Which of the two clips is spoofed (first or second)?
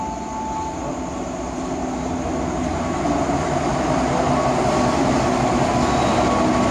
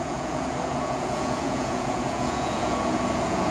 second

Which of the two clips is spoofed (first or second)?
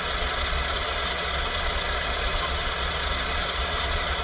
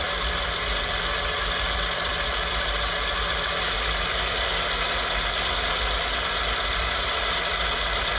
first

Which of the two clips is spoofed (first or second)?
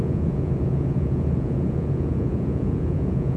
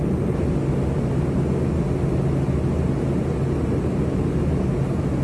first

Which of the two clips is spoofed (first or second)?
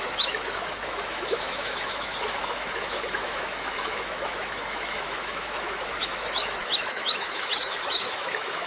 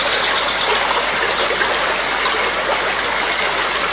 first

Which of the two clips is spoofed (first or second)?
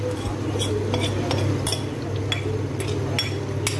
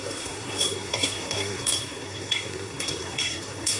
second